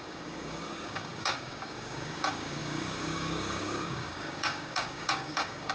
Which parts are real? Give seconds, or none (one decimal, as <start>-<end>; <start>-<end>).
none